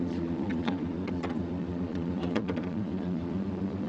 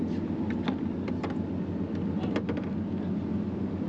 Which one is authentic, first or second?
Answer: second